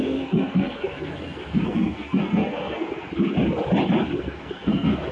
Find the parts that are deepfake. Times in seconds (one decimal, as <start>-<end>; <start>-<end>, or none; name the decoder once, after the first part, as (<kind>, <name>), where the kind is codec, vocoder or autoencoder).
0.0-3.1 (codec, SNAC); 4.2-5.1